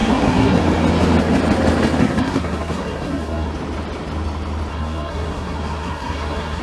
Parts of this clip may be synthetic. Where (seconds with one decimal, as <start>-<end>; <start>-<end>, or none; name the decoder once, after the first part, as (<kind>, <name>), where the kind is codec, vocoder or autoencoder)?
0.0-0.6 (codec, SNAC); 2.0-3.5; 4.7-6.6